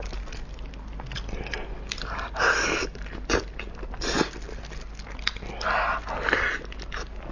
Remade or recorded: recorded